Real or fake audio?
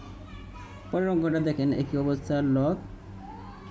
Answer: real